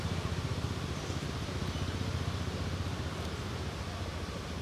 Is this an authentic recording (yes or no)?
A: yes